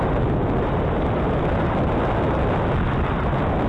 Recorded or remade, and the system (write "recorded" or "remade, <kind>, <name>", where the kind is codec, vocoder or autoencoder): recorded